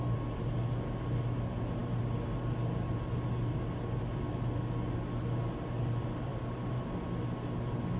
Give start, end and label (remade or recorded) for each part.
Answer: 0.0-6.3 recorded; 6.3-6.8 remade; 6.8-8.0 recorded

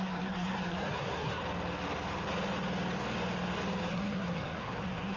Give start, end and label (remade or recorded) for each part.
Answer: 0.0-1.4 remade; 1.4-3.9 recorded; 3.9-5.2 remade

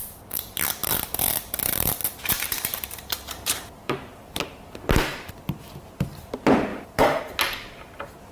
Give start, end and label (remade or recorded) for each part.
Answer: 0.0-0.8 recorded; 0.8-4.5 remade; 4.5-5.1 recorded; 5.1-5.6 remade; 5.6-6.7 recorded; 6.7-7.2 remade; 7.2-8.3 recorded

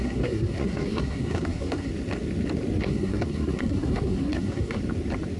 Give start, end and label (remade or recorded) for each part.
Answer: 0.0-1.9 remade; 1.9-2.8 recorded; 2.8-4.8 remade; 4.8-5.4 recorded